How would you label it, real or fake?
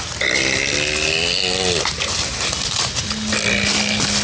real